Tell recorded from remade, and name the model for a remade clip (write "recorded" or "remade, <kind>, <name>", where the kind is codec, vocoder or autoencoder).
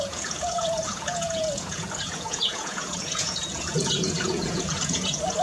remade, vocoder, Vocos